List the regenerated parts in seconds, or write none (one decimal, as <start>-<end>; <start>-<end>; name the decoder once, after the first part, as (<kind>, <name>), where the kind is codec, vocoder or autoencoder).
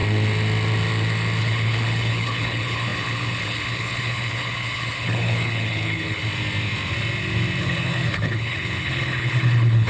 1.4-6.2 (codec, HILCodec); 7.6-9.9